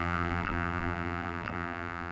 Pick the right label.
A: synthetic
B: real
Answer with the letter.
A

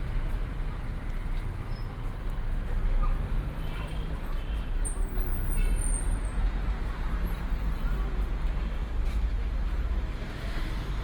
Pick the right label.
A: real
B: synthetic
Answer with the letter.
A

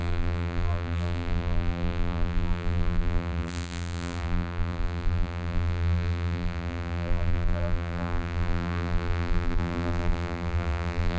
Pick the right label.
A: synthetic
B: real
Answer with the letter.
A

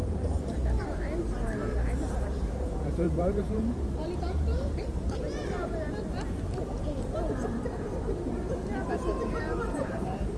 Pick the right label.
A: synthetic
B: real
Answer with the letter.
A